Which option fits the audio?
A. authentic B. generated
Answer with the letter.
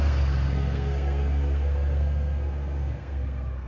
B